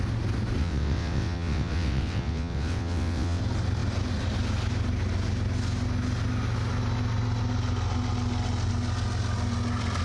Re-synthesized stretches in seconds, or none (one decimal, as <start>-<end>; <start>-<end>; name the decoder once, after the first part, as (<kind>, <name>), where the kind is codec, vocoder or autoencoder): 0.6-3.4 (vocoder, WaveNeXt)